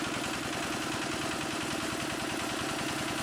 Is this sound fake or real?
real